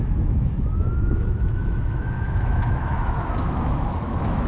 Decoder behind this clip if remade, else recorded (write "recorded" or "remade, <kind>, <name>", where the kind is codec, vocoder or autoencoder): remade, autoencoder, DAC-VAE